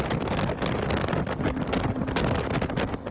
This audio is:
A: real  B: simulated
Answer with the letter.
A